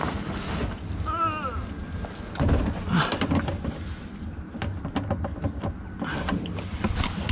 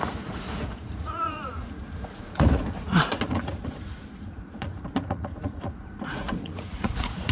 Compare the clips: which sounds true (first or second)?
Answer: first